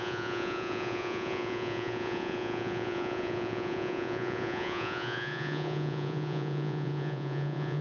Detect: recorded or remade remade